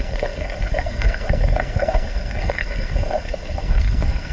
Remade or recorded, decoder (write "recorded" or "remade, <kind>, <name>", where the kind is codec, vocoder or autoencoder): remade, codec, SNAC